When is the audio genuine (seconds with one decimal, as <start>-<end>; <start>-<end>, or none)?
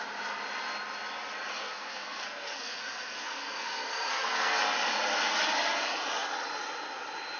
0.0-1.5; 4.6-7.4